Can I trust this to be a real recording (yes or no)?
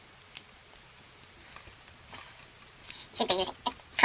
yes